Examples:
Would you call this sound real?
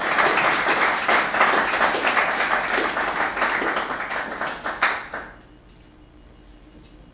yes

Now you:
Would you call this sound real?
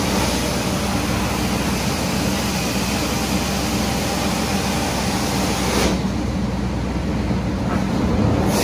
yes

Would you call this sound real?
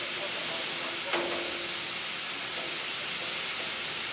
yes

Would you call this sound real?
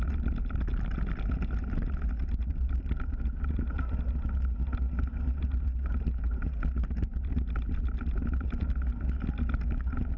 yes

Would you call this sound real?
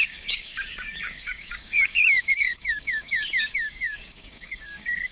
no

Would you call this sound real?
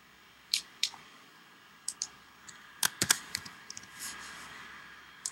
no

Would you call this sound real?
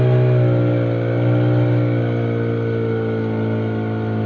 yes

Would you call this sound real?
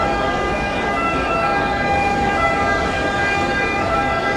no